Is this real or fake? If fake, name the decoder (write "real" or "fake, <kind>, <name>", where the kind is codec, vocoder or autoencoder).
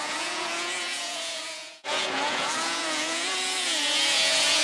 fake, vocoder, Vocos